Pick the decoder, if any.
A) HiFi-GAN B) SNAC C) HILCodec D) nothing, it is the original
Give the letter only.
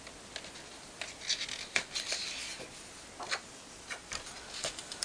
D